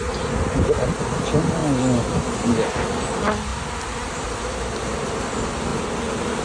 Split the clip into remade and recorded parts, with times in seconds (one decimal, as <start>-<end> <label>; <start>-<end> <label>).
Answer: 0.0-6.4 recorded